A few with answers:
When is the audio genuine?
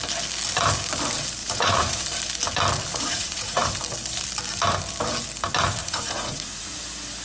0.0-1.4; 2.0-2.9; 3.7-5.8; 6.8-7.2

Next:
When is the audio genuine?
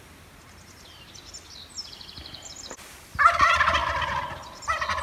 0.0-5.0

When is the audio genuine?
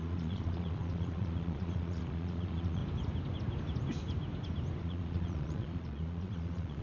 2.8-4.8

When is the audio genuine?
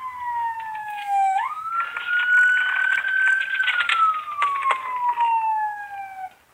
0.0-0.8; 1.7-6.5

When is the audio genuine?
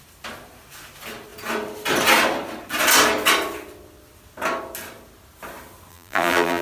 0.0-5.9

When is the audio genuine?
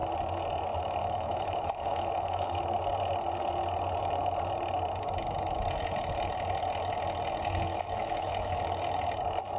0.0-1.0; 2.6-7.7; 8.6-9.6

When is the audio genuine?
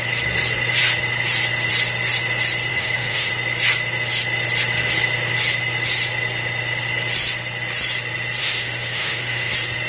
0.0-2.7; 3.3-8.4; 9.5-9.9